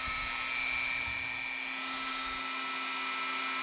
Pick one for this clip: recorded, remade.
recorded